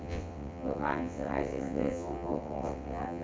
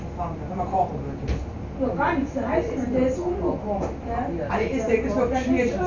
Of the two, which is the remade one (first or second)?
first